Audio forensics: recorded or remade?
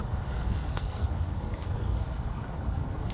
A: remade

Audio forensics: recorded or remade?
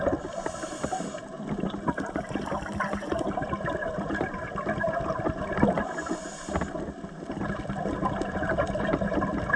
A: recorded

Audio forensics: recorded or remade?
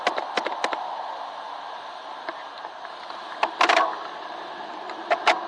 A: recorded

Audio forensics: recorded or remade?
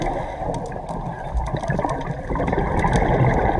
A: recorded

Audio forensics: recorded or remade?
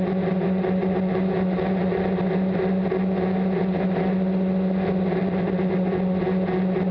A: recorded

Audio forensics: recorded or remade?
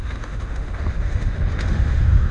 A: remade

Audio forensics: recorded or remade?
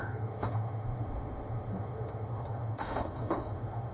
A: remade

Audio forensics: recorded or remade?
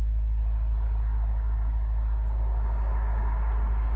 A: recorded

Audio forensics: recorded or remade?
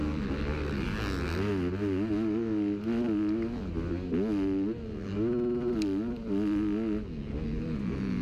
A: recorded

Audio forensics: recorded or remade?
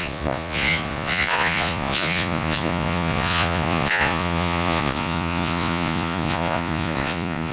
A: remade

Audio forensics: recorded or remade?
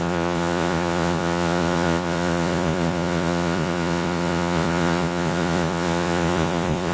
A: remade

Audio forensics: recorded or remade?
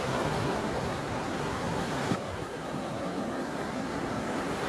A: remade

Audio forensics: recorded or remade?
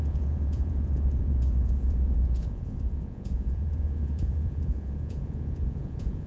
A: remade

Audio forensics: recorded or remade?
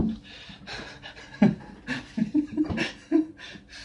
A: recorded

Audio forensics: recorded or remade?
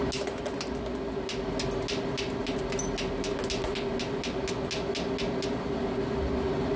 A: recorded